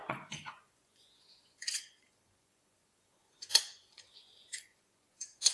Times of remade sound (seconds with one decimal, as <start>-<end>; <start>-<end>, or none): 0.0-5.5